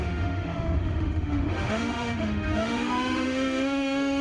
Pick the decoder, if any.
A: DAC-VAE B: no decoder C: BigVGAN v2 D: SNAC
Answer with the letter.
A